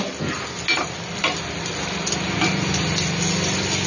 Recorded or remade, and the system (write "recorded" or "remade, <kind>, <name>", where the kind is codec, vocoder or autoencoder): recorded